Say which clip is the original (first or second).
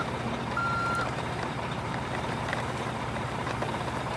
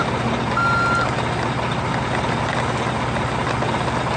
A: second